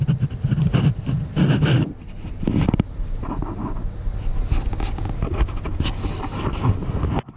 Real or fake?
fake